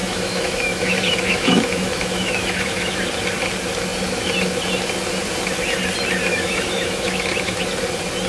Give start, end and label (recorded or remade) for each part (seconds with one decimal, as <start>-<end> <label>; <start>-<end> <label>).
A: 0.0-3.0 remade; 3.0-6.3 recorded; 6.3-7.6 remade; 7.6-8.3 recorded